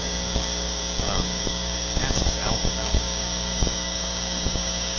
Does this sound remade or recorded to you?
remade